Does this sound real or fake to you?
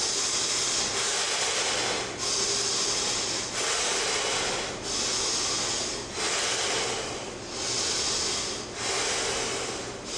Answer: real